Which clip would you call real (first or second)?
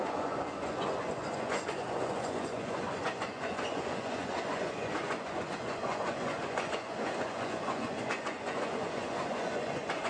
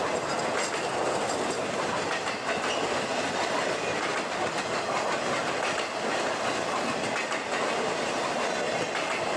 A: second